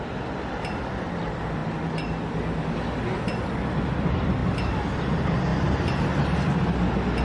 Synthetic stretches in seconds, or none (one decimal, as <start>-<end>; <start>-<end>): none